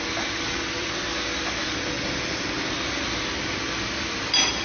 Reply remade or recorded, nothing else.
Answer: recorded